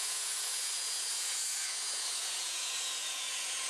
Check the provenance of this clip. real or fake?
fake